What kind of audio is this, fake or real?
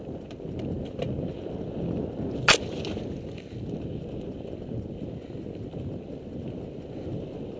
real